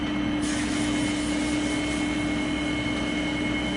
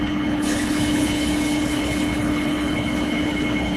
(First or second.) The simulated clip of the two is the second